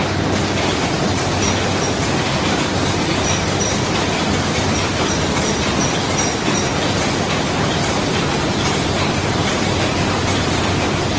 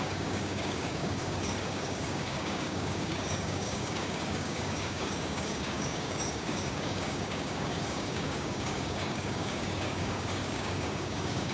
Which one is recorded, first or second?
first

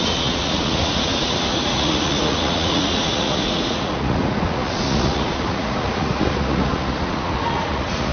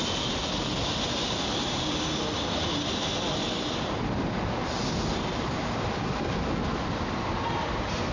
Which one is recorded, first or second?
second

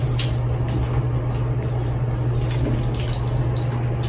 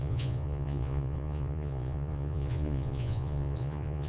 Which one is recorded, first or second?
first